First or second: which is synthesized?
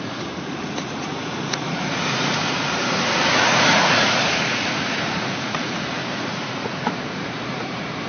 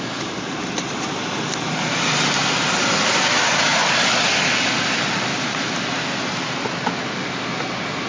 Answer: first